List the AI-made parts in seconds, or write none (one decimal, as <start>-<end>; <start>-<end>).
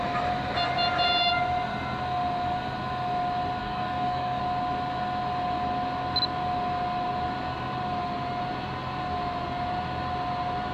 3.6-4.4